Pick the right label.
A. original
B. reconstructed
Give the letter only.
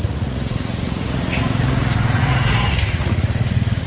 B